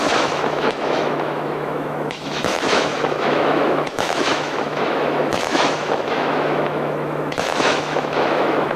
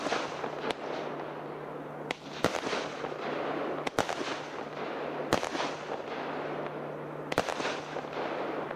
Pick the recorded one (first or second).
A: second